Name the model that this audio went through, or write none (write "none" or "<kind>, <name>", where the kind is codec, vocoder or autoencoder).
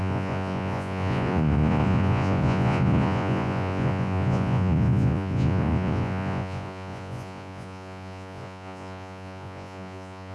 vocoder, Vocos